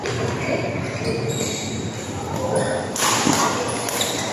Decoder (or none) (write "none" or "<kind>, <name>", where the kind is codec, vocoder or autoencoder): none